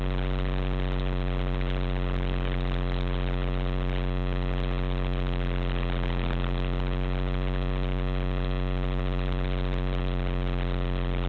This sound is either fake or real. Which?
real